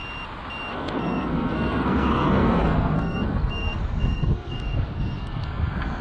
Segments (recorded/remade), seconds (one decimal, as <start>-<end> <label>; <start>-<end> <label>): 0.0-0.7 recorded; 0.7-6.0 remade

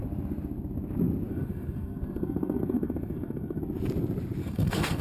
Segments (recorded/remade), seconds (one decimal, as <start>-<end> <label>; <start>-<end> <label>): 0.0-1.3 recorded; 1.3-3.6 remade; 3.6-4.4 recorded; 4.4-5.0 remade

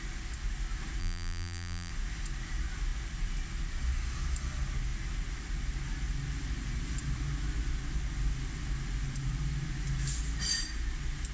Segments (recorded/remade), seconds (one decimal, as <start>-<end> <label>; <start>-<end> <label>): 0.0-1.0 recorded; 1.0-1.9 remade; 1.9-11.3 recorded

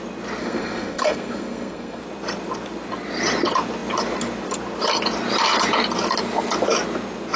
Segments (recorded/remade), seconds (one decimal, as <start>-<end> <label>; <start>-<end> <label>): 0.0-0.4 recorded; 0.4-2.0 remade; 2.0-7.4 recorded

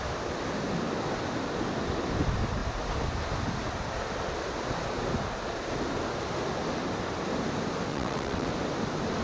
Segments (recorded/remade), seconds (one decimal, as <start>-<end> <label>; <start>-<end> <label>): 0.0-7.9 recorded; 7.9-8.5 remade; 8.5-9.2 recorded